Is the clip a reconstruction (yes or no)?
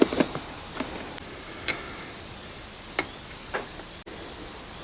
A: no